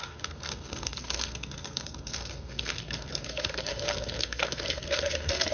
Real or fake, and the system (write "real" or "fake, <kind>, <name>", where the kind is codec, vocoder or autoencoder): fake, codec, SNAC